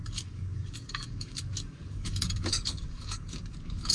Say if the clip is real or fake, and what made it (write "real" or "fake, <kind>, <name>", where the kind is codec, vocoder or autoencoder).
fake, codec, DAC